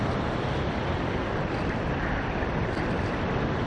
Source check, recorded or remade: recorded